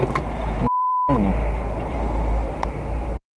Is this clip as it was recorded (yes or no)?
no